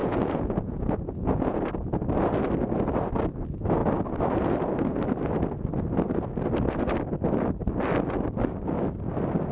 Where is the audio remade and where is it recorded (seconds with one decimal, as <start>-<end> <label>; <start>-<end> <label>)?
0.0-1.6 remade; 1.6-9.5 recorded